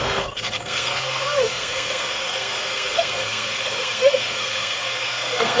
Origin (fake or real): fake